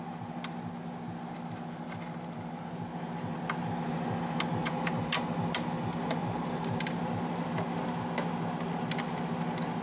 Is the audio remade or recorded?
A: recorded